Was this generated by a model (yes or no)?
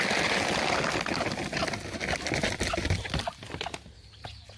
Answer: no